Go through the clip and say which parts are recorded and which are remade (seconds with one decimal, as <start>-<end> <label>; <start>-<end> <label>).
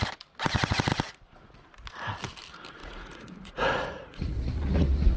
0.0-2.8 recorded; 2.8-5.2 remade